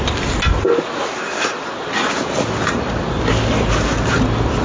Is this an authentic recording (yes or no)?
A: yes